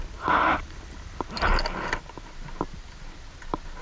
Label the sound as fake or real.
real